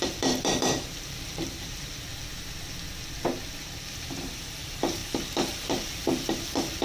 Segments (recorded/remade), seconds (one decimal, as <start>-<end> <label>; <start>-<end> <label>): 0.0-2.1 remade; 2.1-3.6 recorded; 3.6-6.8 remade